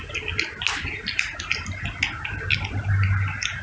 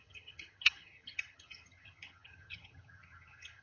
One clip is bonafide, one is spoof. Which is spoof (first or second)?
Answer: second